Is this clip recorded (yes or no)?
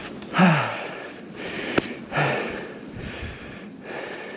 yes